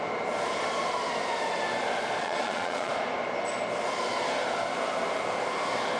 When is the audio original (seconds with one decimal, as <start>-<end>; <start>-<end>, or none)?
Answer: 0.0-2.2; 2.9-6.0